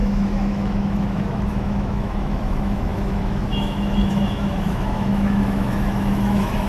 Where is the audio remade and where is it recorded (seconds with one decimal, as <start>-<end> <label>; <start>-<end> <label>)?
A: 0.0-6.7 remade